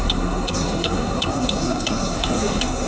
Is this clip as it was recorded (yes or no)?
no